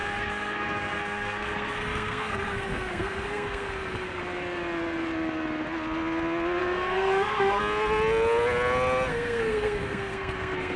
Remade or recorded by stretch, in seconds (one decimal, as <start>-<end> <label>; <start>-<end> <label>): 0.0-4.2 remade; 4.2-6.6 recorded; 6.6-7.6 remade; 7.6-9.1 recorded; 9.1-10.8 remade